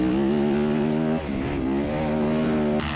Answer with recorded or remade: recorded